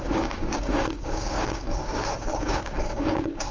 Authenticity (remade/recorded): remade